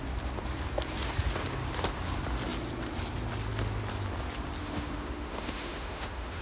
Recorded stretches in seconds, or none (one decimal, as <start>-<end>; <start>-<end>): 0.0-4.6